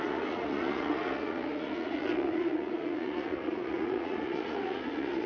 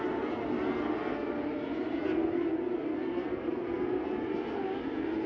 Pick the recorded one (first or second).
second